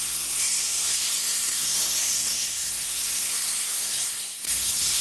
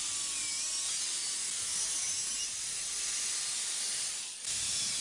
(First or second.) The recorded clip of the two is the second